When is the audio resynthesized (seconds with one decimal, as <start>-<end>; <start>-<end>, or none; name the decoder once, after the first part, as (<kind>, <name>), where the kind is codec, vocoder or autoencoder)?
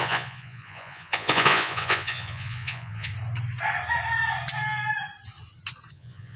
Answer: 0.0-3.1 (vocoder, Vocos); 5.9-6.4